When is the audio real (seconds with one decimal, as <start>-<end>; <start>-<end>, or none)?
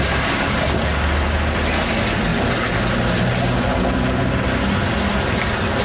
0.0-5.8